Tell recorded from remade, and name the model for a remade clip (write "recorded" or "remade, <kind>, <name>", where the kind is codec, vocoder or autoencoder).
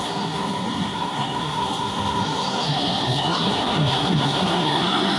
remade, codec, SNAC